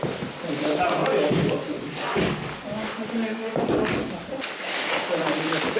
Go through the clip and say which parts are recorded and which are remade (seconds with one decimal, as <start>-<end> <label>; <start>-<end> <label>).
0.0-2.1 recorded; 2.1-3.6 remade; 3.6-5.8 recorded